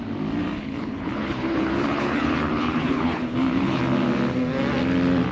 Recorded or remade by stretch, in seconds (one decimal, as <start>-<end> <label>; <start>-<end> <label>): 0.0-0.6 recorded; 0.6-3.8 remade; 3.8-5.3 recorded